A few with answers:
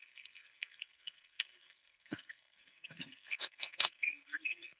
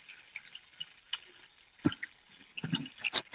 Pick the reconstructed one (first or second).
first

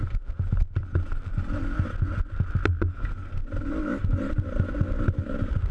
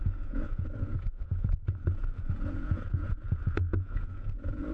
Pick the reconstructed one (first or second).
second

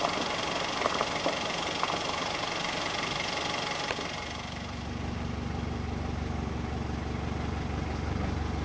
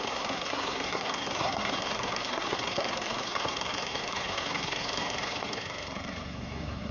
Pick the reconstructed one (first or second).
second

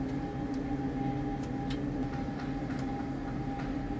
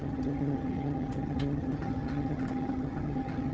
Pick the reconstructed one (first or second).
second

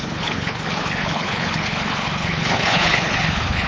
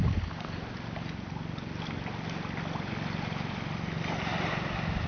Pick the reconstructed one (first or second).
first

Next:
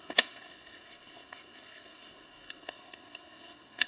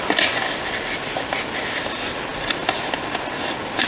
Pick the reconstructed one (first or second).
first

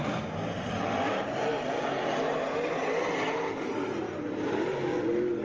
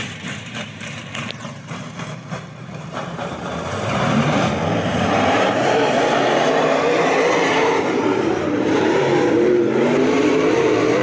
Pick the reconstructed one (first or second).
second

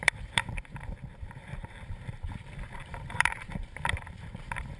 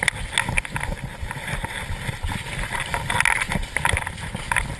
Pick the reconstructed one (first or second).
first